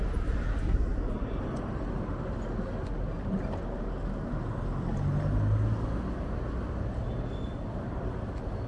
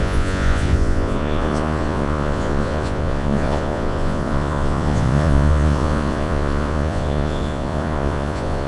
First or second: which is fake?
second